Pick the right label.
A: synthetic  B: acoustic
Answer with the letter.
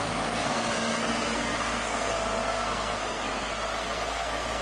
A